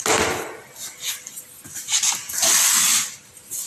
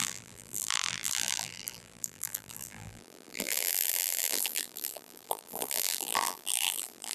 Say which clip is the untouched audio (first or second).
first